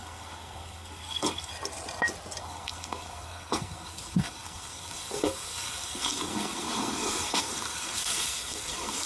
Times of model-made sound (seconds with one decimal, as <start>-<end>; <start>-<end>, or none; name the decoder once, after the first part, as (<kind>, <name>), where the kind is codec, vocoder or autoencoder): 0.0-1.5 (codec, SNAC); 2.4-9.1